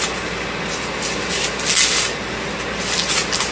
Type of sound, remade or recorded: recorded